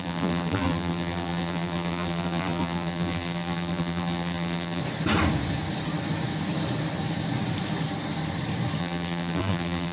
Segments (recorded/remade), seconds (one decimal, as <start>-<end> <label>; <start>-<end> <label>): 0.0-4.8 remade; 4.8-8.8 recorded; 8.8-9.9 remade